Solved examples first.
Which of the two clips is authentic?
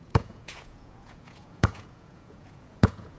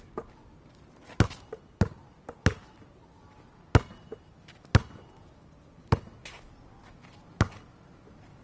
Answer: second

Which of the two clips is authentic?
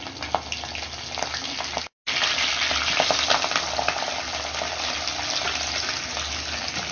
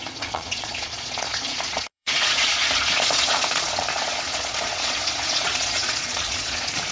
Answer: first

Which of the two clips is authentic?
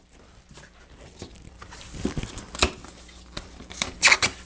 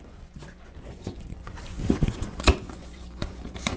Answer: first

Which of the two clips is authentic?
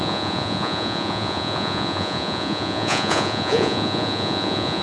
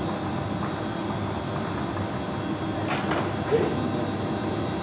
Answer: second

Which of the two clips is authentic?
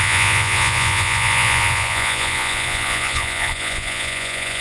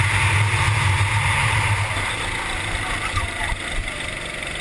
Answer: second